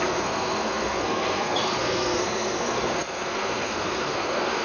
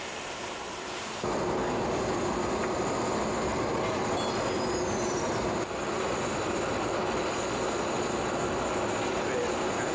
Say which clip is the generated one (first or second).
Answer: first